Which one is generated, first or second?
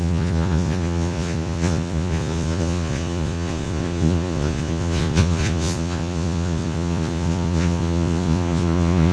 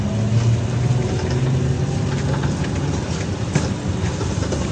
first